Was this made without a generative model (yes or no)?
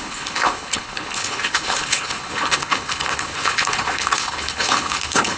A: no